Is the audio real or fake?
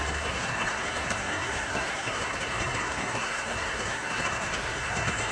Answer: fake